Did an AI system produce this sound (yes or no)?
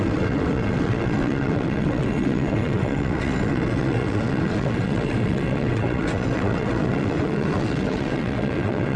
yes